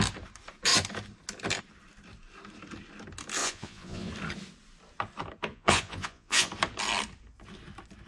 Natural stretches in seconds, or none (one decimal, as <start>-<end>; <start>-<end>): 0.0-3.4; 4.1-5.5; 6.5-8.1